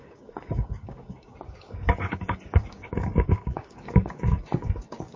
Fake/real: fake